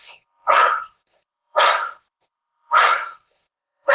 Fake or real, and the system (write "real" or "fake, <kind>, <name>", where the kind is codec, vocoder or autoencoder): fake, codec, SNAC